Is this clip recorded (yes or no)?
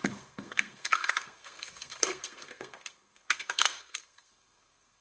no